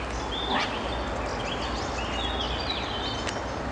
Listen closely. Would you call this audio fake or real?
real